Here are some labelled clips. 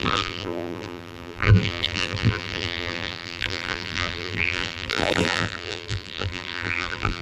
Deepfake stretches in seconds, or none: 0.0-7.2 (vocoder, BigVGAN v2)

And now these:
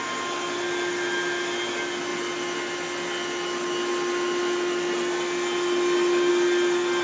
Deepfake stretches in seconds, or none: none

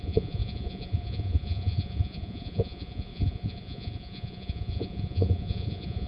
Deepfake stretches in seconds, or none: 0.0-6.1 (vocoder, Vocos)

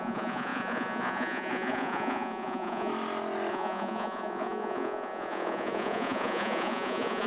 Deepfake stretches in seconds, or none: 0.0-2.9 (vocoder, Vocos); 3.5-7.3

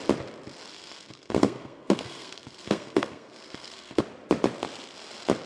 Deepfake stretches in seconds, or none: 0.7-4.0 (codec, SNAC)